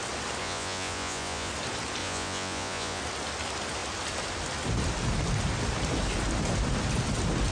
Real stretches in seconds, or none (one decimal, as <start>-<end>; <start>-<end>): 0.0-0.4; 1.5-2.0; 3.0-7.5